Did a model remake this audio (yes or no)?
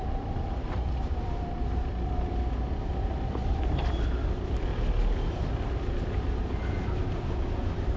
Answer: no